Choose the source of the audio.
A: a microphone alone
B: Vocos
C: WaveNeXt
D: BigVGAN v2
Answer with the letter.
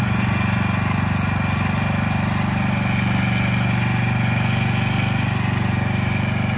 A